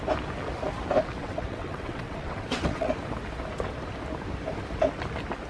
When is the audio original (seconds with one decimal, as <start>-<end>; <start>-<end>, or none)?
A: 0.0-1.2; 2.9-5.5